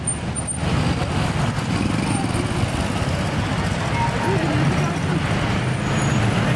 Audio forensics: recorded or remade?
recorded